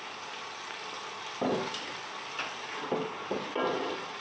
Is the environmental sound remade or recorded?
recorded